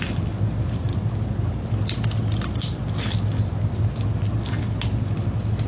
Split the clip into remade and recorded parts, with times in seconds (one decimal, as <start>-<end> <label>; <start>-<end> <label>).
0.0-5.7 recorded